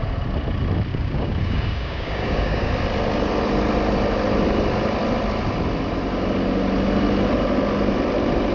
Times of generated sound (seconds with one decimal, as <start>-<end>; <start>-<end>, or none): 0.9-2.7